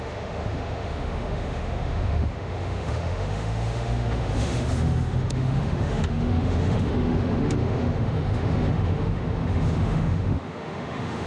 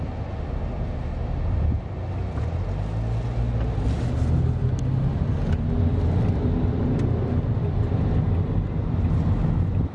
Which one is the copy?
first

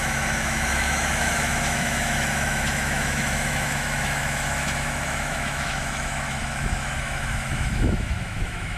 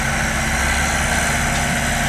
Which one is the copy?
first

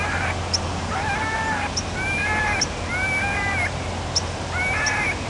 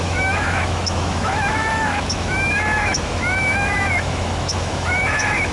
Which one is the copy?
second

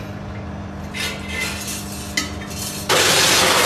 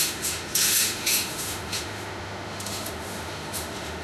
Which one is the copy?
second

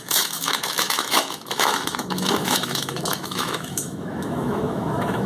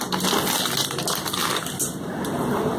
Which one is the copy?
first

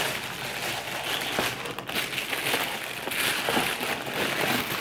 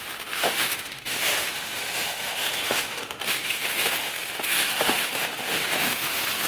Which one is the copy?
second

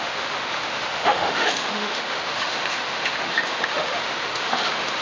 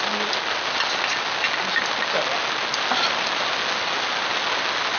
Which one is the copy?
first